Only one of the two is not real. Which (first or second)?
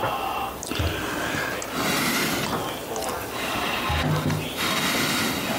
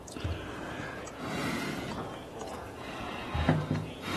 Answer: second